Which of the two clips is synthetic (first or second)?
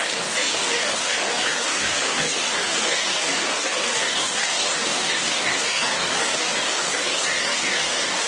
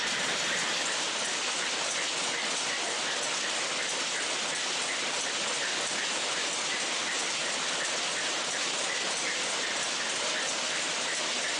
first